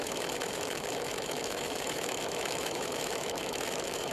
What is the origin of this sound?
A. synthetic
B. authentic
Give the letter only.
A